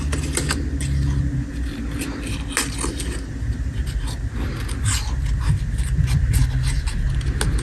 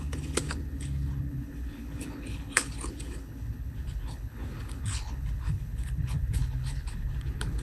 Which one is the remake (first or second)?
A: second